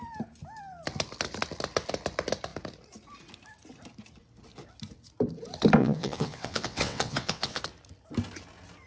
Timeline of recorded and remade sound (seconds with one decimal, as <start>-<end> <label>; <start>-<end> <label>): 0.0-5.8 recorded; 5.8-7.6 remade; 7.6-8.9 recorded

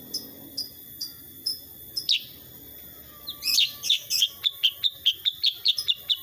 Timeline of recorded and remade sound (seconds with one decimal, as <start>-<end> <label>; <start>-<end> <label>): 0.0-6.2 recorded

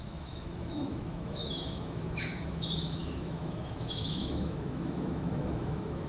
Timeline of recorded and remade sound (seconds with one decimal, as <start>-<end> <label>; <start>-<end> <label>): 0.0-6.1 remade

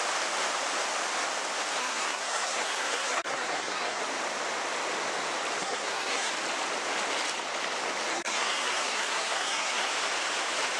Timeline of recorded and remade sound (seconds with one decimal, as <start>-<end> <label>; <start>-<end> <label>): 0.0-1.8 recorded; 1.8-4.0 remade; 4.0-5.6 recorded; 5.6-6.3 remade; 6.3-8.1 recorded; 8.1-9.9 remade; 9.9-10.8 recorded

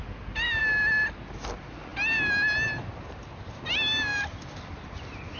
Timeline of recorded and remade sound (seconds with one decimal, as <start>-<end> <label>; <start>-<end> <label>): 0.0-5.4 recorded

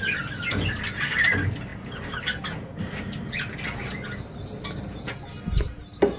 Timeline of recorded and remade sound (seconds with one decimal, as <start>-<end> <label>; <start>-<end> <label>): 0.0-6.2 recorded

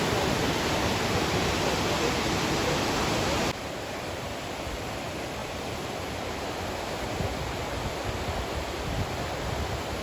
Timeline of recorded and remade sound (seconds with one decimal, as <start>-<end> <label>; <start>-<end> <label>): 0.0-5.4 recorded; 5.4-6.7 remade; 6.7-10.0 recorded